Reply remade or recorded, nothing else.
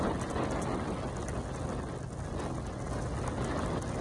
recorded